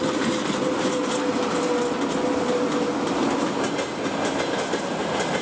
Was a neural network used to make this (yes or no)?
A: no